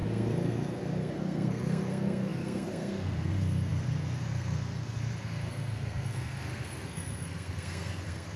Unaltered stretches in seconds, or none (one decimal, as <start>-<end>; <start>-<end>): none